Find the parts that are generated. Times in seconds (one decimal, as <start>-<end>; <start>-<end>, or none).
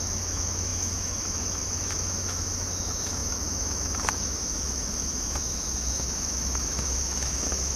0.0-7.8